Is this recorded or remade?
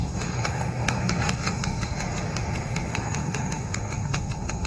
remade